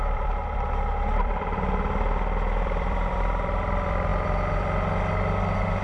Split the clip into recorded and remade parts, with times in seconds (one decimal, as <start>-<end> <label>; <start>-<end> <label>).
0.0-4.1 remade; 4.1-5.8 recorded